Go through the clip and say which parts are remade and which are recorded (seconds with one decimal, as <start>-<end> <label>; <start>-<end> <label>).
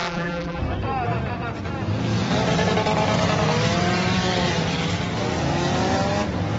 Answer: 0.0-0.6 remade; 0.6-6.6 recorded